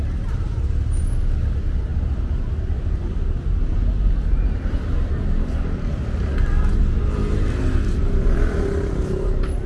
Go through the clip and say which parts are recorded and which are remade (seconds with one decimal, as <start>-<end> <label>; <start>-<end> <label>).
0.0-9.7 recorded